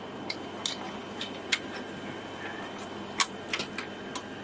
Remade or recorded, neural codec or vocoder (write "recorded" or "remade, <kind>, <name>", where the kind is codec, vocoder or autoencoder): recorded